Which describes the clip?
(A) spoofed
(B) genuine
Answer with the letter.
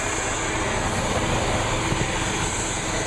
B